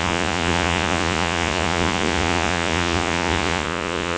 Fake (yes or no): yes